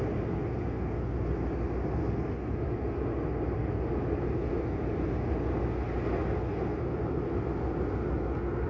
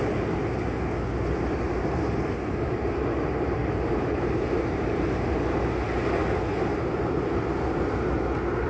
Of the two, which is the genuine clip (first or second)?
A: first